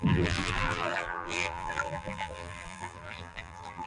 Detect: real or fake fake